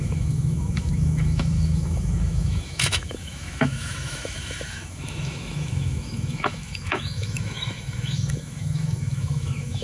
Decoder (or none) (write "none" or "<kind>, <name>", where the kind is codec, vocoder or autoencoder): autoencoder, DAC-VAE